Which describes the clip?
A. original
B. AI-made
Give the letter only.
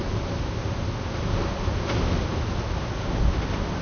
A